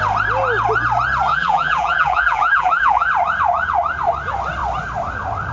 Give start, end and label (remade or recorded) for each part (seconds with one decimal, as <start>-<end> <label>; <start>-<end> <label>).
0.0-1.3 recorded; 1.3-3.1 remade; 3.1-5.5 recorded